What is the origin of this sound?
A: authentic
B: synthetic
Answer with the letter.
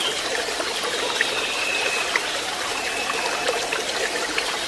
A